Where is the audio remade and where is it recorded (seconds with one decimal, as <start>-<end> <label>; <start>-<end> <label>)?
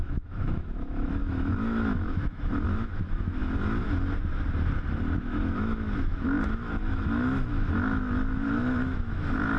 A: 0.0-3.4 remade; 3.4-5.2 recorded; 5.2-9.6 remade